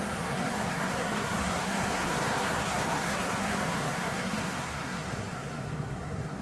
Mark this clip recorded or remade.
remade